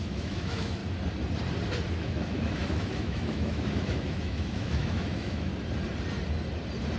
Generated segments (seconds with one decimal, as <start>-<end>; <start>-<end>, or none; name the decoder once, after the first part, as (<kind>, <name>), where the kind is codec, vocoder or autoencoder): 0.0-0.8 (autoencoder, DAC-VAE); 1.9-5.5